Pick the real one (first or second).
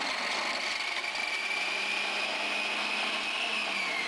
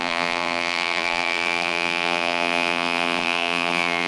first